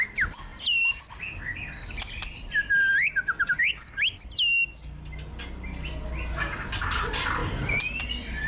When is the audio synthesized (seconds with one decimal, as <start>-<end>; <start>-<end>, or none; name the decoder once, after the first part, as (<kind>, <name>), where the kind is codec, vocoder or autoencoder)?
0.5-1.8 (vocoder, BigVGAN v2); 7.4-8.5